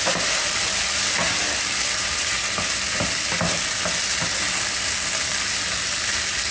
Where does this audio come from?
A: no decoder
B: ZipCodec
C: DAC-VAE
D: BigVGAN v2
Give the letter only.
A